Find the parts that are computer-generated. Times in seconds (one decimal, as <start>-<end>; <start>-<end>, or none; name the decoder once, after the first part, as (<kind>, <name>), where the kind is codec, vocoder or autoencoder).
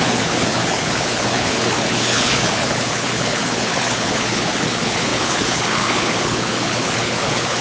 0.0-7.6 (codec, HILCodec)